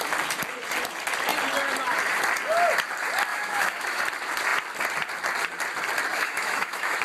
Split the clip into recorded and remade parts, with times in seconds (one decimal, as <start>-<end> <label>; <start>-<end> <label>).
0.0-3.3 recorded; 3.3-4.0 remade; 4.0-6.1 recorded; 6.1-7.0 remade

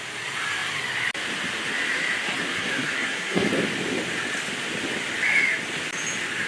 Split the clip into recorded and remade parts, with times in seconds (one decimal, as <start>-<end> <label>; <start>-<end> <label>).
0.0-2.5 recorded; 2.5-3.5 remade; 3.5-6.5 recorded

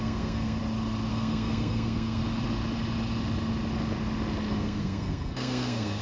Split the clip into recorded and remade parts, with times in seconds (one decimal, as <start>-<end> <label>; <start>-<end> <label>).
0.0-0.6 remade; 0.6-1.1 recorded; 1.1-2.2 remade; 2.2-4.5 recorded; 4.5-6.0 remade

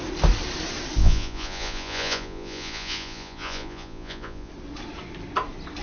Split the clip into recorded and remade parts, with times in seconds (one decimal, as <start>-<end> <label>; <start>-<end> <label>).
0.0-1.0 recorded; 1.0-4.5 remade; 4.5-5.8 recorded

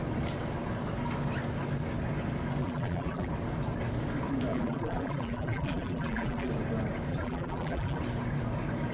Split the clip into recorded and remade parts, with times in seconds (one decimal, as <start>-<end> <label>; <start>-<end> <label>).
0.0-2.6 recorded; 2.6-3.3 remade; 3.3-4.5 recorded; 4.5-6.5 remade; 6.5-7.1 recorded; 7.1-8.0 remade; 8.0-8.9 recorded

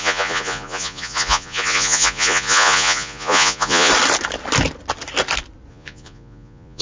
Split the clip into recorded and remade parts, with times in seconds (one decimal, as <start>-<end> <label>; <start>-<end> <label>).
0.0-3.9 remade; 3.9-5.7 recorded; 5.7-6.8 remade

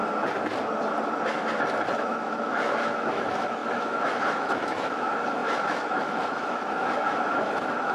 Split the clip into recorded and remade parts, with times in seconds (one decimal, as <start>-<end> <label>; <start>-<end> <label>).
0.0-1.9 recorded; 1.9-7.9 remade